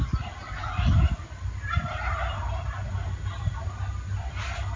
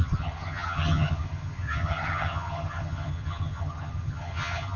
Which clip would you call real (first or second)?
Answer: first